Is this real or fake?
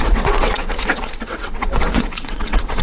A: fake